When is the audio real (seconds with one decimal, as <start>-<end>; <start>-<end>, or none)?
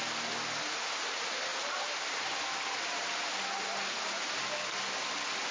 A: 0.0-1.5; 4.5-5.5